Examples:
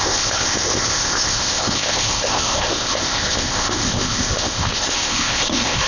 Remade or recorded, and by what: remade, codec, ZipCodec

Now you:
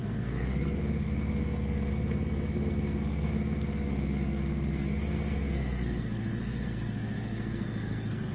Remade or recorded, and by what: remade, codec, SNAC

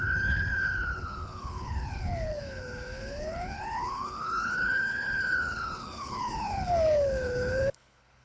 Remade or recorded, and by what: remade, codec, HILCodec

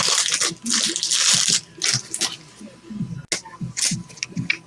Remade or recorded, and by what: recorded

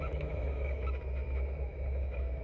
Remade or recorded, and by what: remade, autoencoder, DAC-VAE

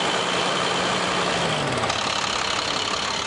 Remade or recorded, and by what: recorded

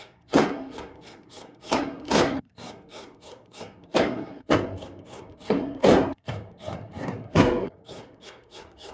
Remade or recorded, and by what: remade, codec, SNAC